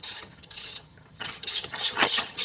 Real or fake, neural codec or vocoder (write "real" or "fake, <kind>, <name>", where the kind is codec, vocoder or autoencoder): fake, vocoder, HiFi-GAN